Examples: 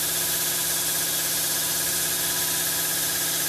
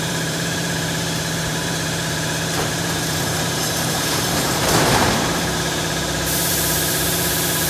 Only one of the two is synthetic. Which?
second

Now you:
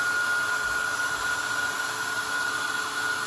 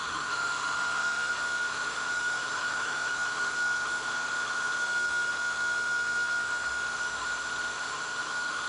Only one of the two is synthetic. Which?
second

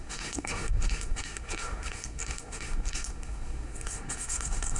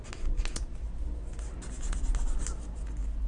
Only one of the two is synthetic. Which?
first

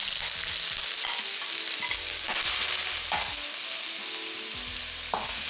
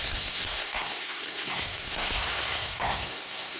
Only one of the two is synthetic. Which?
second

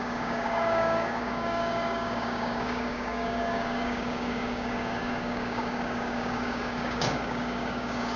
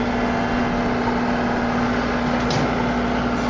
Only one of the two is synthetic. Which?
first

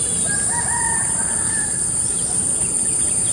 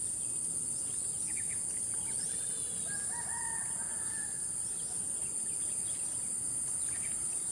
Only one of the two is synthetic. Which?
first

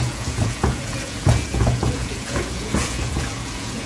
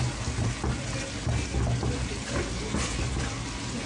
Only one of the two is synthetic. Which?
first